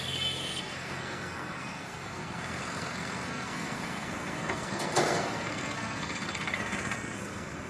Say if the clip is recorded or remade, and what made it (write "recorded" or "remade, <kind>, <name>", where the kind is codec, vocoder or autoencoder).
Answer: remade, codec, SNAC